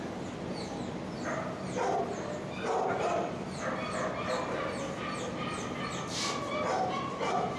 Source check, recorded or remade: recorded